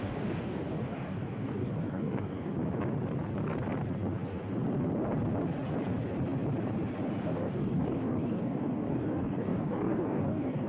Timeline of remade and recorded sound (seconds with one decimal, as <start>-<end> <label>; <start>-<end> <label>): 0.0-2.5 remade; 2.5-7.2 recorded; 7.2-10.7 remade